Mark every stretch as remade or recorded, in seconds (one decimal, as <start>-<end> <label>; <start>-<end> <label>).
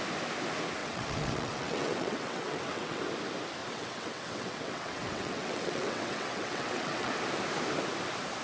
0.0-0.8 recorded; 0.8-3.0 remade; 3.0-3.6 recorded; 3.6-7.1 remade; 7.1-8.4 recorded